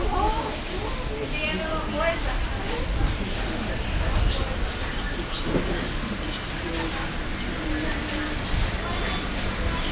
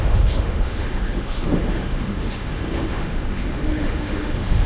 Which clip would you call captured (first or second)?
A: first